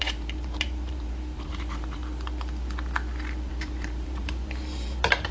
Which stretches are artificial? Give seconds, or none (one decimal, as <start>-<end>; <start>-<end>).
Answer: 0.0-2.0; 3.5-5.3